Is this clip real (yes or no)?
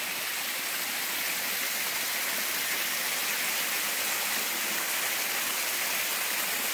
yes